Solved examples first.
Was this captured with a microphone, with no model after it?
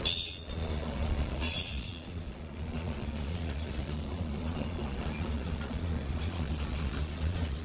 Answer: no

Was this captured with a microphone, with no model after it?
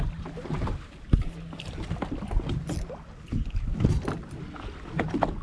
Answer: yes